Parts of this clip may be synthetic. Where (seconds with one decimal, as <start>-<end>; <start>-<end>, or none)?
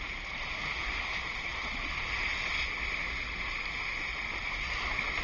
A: none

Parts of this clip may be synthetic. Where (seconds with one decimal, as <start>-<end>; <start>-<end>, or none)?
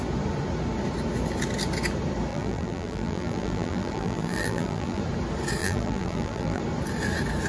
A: 2.3-5.0; 5.6-6.6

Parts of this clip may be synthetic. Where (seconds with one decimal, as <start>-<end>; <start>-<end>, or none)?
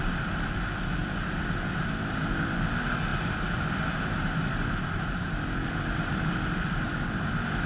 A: none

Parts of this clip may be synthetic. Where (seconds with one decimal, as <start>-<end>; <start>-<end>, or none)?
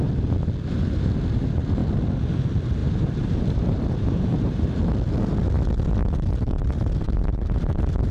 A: 2.8-4.8; 6.0-8.1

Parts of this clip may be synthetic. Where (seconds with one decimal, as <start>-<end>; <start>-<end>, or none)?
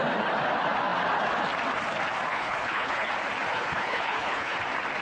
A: 2.3-3.1; 3.5-4.6